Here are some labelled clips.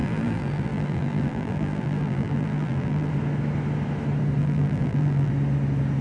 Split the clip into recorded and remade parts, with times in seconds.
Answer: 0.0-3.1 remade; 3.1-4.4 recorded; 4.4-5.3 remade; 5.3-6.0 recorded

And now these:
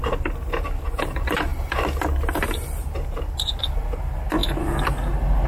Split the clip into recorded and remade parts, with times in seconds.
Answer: 0.0-5.5 recorded

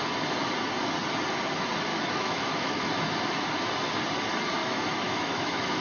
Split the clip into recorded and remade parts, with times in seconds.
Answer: 0.0-1.9 recorded; 1.9-2.9 remade; 2.9-4.6 recorded; 4.6-5.8 remade

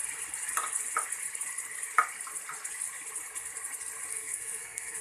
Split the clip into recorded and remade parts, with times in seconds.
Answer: 0.0-4.1 recorded; 4.1-5.0 remade

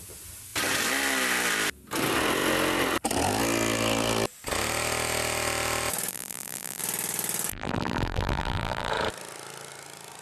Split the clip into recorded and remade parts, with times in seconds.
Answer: 0.0-6.1 recorded; 6.1-6.8 remade; 6.8-7.5 recorded; 7.5-8.9 remade; 8.9-10.2 recorded

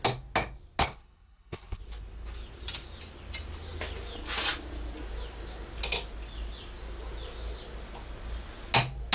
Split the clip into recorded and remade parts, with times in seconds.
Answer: 0.0-0.8 recorded; 0.8-1.8 remade; 1.8-9.1 recorded